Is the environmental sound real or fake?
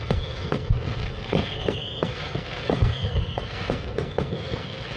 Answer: fake